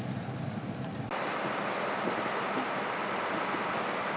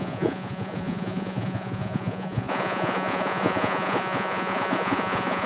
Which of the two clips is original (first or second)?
first